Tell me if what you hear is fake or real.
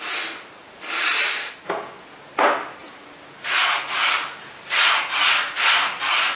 real